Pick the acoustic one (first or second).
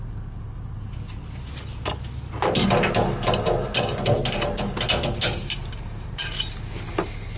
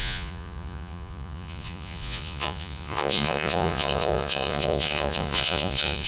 first